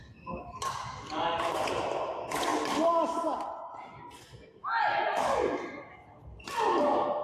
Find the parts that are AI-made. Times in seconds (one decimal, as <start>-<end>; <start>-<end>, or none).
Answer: 4.6-5.4